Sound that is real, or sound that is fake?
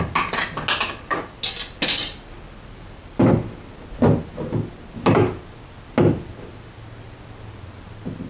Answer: real